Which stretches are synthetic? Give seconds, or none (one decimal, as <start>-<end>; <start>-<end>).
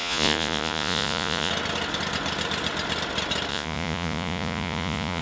0.0-1.5; 3.5-5.2